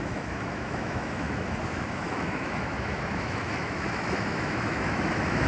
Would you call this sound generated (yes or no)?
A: yes